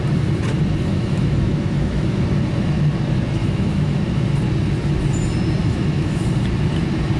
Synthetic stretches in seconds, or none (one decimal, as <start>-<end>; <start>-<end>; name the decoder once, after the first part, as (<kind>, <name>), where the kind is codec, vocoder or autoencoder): 0.9-2.2 (autoencoder, DAC-VAE); 3.4-4.0; 5.6-6.2